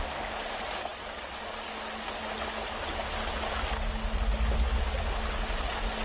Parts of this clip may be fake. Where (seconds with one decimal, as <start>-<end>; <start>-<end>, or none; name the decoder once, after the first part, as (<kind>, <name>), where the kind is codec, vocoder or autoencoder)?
none